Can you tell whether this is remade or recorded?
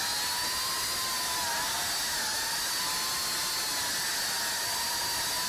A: recorded